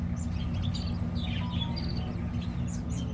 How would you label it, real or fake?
real